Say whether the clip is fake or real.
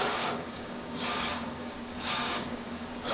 fake